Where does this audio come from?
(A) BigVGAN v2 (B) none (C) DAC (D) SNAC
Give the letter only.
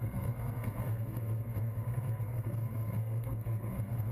D